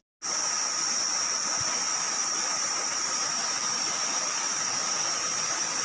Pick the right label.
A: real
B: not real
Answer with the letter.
A